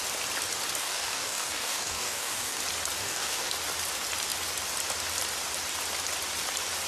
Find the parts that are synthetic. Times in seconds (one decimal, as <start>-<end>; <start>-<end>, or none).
0.8-2.6; 3.0-3.5